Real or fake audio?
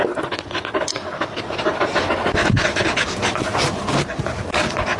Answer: real